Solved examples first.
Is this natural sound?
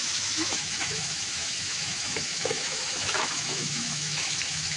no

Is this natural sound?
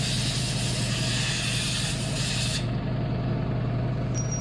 yes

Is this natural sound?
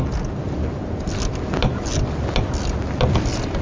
yes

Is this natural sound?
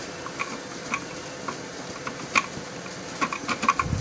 yes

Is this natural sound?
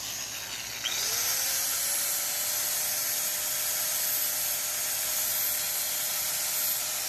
yes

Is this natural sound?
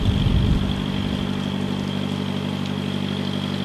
yes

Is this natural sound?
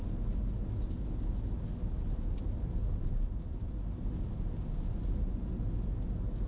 yes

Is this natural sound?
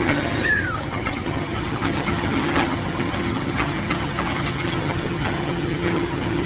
no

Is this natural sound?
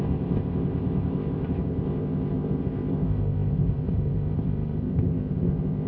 no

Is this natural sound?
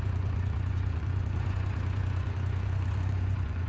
no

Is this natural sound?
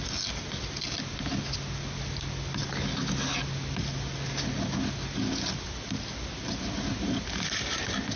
yes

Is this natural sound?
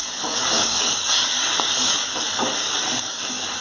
no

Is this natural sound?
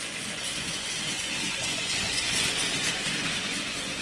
no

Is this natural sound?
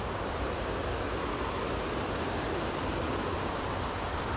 yes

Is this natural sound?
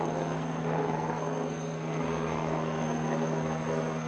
no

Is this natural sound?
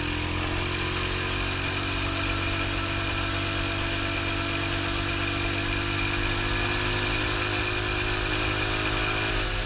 yes